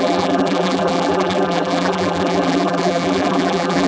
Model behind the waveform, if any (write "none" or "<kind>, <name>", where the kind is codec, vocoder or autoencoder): vocoder, BigVGAN v2